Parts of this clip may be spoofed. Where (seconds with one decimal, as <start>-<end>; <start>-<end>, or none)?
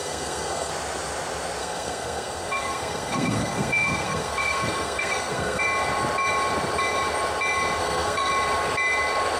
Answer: 0.0-0.7; 1.6-5.6; 7.8-8.3